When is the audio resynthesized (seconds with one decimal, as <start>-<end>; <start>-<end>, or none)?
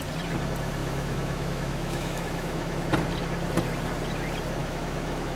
0.8-2.9; 4.6-5.4